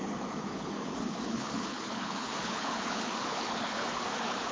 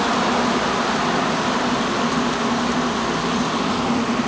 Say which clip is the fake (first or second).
first